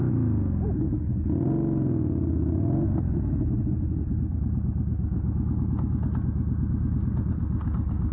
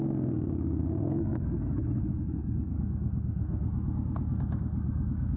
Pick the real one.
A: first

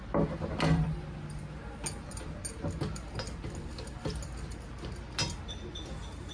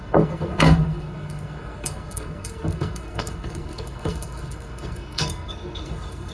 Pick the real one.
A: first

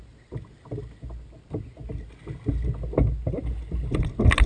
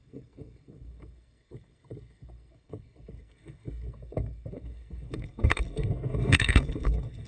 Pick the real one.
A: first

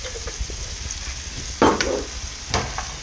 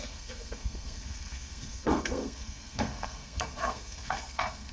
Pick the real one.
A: first